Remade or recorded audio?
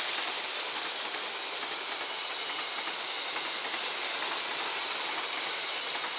recorded